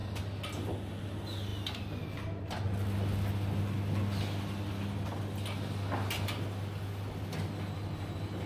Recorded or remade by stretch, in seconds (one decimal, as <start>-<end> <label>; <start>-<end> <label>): 0.0-8.5 recorded